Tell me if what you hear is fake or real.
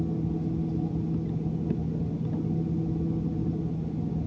real